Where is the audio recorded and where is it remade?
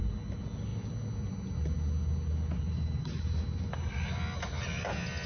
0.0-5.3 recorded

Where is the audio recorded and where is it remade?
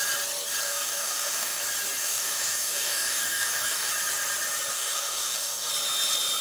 0.0-0.6 recorded; 0.6-1.6 remade; 1.6-2.0 recorded; 2.0-3.9 remade; 3.9-4.7 recorded; 4.7-5.7 remade; 5.7-6.4 recorded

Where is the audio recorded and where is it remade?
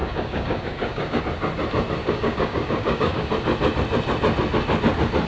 0.0-1.2 remade; 1.2-2.0 recorded; 2.0-3.3 remade; 3.3-5.3 recorded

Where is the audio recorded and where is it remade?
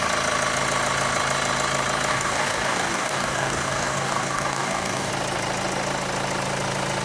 0.0-2.1 recorded; 2.1-5.1 remade; 5.1-7.0 recorded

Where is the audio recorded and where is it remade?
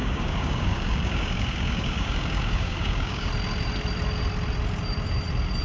0.0-3.3 remade; 3.3-5.6 recorded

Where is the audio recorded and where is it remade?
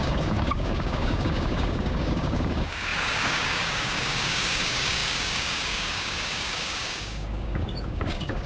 0.0-8.5 remade